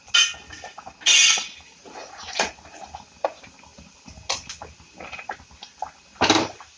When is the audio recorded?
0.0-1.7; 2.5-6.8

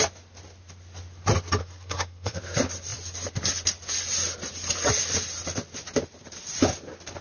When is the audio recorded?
0.0-1.6; 2.4-7.2